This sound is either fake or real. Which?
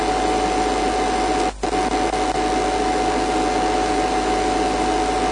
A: real